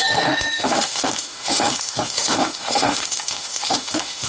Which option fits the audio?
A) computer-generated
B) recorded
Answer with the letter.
A